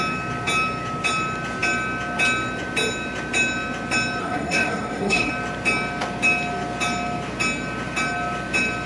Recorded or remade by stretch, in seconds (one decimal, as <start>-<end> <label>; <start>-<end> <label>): 0.0-4.2 recorded; 4.2-5.3 remade; 5.3-8.9 recorded